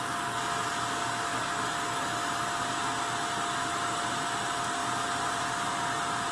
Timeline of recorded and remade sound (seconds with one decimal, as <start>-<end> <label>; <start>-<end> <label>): 0.0-4.8 recorded; 4.8-5.7 remade; 5.7-6.3 recorded